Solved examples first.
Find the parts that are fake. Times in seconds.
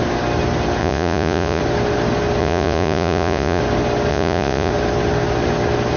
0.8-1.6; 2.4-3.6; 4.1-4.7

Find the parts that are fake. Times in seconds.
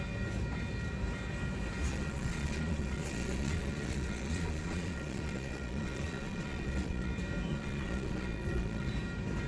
1.9-7.1; 7.5-8.9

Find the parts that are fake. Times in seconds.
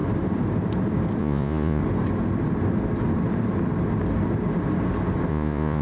1.2-1.8; 5.3-5.8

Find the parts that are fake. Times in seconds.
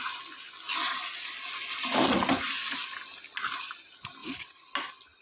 4.2-4.7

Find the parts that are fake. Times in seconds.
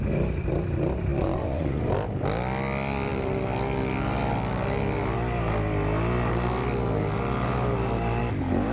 1.1-1.8